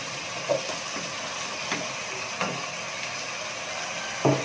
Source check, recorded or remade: recorded